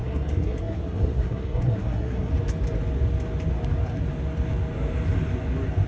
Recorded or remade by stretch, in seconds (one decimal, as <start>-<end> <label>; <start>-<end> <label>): 0.0-2.3 remade; 2.3-5.9 recorded